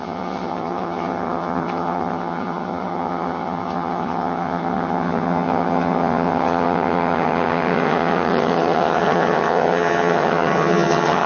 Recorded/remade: remade